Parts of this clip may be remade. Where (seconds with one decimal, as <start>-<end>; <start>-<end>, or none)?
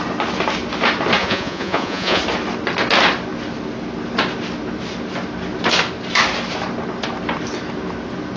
1.2-2.2